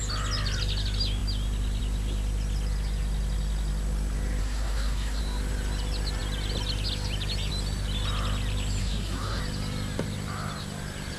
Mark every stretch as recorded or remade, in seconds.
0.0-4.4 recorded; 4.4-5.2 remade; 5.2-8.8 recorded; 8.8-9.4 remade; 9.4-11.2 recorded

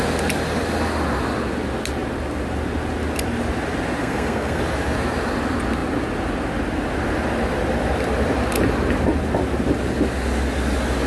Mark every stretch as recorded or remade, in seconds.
0.0-4.0 recorded; 4.0-4.6 remade; 4.6-11.1 recorded